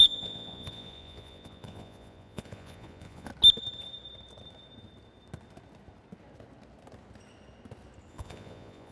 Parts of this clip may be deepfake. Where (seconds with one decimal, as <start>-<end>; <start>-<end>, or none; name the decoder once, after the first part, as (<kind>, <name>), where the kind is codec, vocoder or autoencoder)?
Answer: 0.0-3.3 (vocoder, Vocos); 8.1-8.9